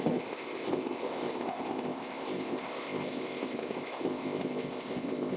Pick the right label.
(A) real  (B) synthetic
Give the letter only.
B